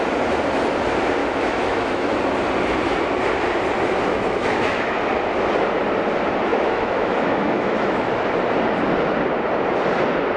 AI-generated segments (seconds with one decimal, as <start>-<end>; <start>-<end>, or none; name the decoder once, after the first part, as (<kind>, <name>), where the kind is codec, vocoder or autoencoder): 1.2-2.1 (autoencoder, DAC-VAE); 4.1-5.1; 6.5-8.1